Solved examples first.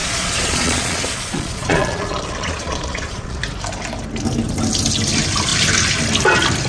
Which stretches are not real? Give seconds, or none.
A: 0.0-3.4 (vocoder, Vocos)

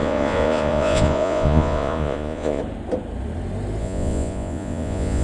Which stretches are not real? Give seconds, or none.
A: 0.0-2.6 (vocoder, Vocos); 3.8-5.2

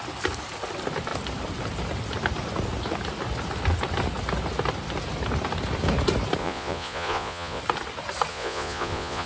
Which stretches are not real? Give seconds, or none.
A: 6.4-7.6 (vocoder, Vocos); 8.3-9.3

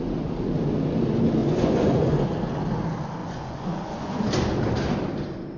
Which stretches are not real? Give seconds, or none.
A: 1.4-2.3 (vocoder, Vocos); 3.2-4.2

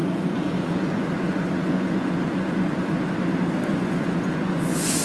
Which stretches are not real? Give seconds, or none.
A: 0.0-3.0 (vocoder, Vocos); 3.7-5.0